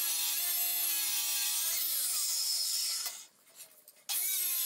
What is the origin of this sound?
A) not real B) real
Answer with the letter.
B